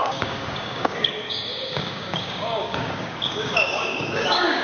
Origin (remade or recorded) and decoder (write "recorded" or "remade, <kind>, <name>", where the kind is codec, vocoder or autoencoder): remade, codec, DAC